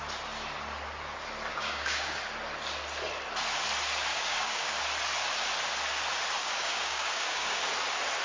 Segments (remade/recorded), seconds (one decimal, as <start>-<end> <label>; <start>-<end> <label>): 0.0-1.5 recorded; 1.5-2.2 remade; 2.2-4.1 recorded; 4.1-4.8 remade; 4.8-6.4 recorded; 6.4-7.6 remade; 7.6-8.2 recorded